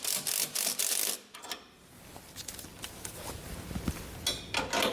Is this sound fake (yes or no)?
no